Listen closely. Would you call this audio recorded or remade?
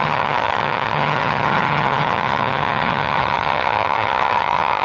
remade